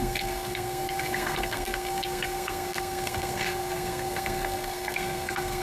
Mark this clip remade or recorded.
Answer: remade